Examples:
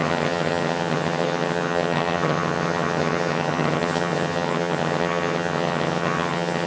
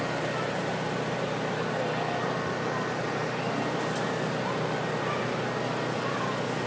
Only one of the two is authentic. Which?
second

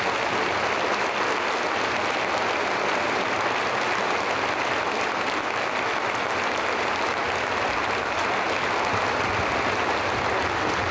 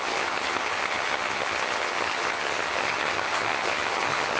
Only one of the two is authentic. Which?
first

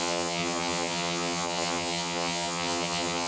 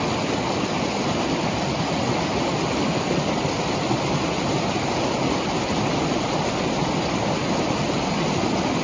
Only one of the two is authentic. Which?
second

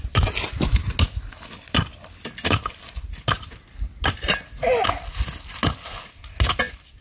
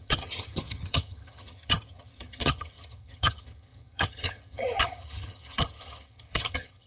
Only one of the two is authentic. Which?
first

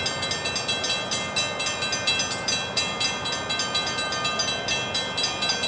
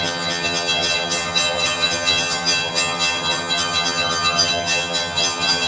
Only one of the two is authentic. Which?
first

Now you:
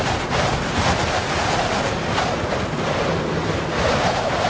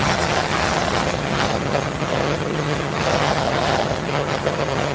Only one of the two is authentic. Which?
first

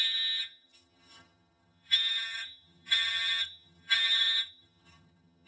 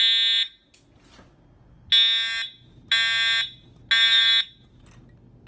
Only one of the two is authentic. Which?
second